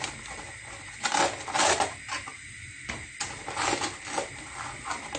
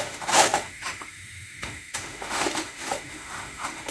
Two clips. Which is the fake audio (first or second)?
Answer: second